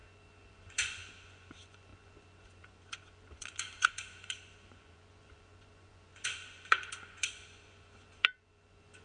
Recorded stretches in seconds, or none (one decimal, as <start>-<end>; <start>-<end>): none